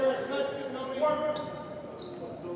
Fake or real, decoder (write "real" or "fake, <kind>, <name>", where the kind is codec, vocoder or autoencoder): fake, vocoder, BigVGAN v2